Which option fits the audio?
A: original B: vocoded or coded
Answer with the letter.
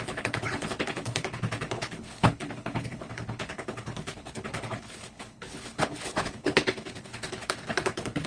B